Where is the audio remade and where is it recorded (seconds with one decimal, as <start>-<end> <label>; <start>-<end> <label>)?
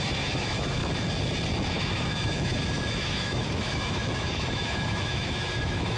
0.0-0.8 remade; 0.8-1.7 recorded; 1.7-6.0 remade